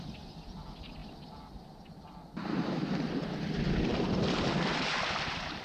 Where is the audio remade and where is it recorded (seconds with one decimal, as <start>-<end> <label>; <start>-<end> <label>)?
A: 0.0-5.6 recorded